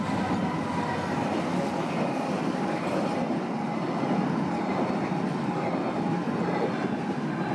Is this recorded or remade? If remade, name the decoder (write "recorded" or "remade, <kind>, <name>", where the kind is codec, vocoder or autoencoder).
recorded